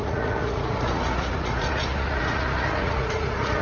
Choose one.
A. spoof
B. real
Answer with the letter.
A